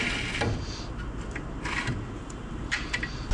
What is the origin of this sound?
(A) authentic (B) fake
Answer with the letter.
A